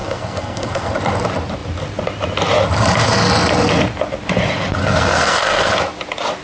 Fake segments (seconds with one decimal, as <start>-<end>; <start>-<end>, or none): 0.0-0.9; 4.8-5.7